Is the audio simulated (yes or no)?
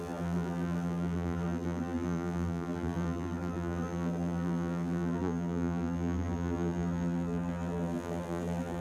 yes